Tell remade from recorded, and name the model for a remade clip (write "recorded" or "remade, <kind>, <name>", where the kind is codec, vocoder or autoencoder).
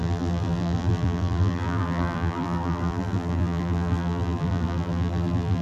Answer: remade, vocoder, BigVGAN v2